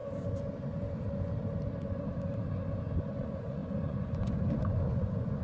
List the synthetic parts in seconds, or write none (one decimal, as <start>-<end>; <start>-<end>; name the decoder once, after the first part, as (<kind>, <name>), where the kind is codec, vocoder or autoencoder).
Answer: 3.2-5.4 (vocoder, Vocos)